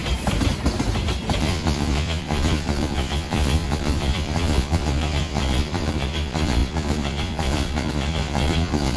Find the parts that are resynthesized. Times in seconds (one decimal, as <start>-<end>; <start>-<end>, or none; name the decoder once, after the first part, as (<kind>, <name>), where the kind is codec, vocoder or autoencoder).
1.4-9.0 (vocoder, Vocos)